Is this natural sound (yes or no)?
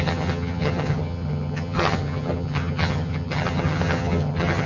no